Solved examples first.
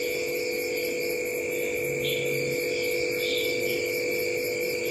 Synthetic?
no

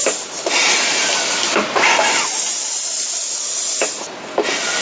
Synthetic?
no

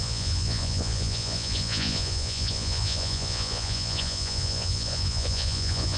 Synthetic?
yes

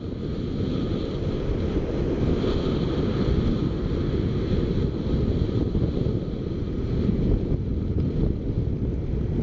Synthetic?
no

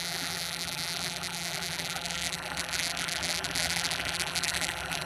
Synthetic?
yes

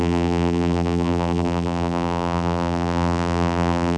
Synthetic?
yes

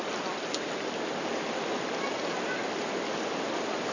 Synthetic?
no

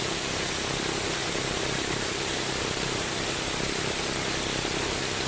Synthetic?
yes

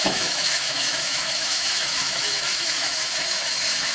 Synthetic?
yes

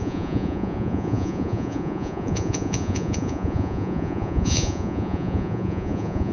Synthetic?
yes